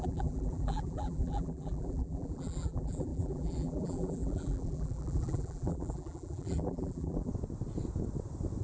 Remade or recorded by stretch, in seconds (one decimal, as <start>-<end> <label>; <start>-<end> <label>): 0.0-7.3 remade; 7.3-8.6 recorded